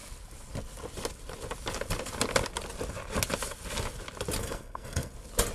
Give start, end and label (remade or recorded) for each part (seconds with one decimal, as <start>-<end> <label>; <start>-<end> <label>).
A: 0.0-4.4 recorded; 4.4-5.1 remade; 5.1-5.5 recorded

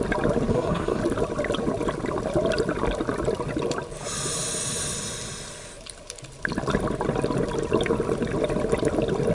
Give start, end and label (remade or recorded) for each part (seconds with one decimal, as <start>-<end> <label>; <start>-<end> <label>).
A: 0.0-0.5 recorded; 0.5-1.0 remade; 1.0-9.3 recorded

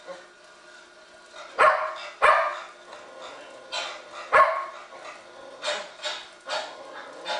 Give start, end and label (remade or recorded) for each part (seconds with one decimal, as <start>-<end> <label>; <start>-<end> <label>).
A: 0.0-7.4 recorded

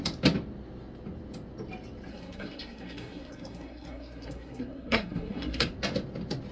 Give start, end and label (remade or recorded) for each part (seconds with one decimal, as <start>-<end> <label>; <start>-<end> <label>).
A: 0.0-2.1 recorded; 2.1-5.7 remade; 5.7-6.5 recorded

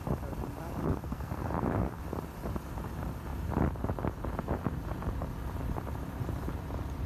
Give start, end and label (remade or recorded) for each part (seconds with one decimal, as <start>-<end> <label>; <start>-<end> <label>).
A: 0.0-0.8 recorded; 0.8-2.0 remade; 2.0-7.1 recorded